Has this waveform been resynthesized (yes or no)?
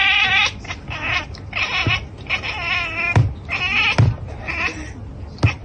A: no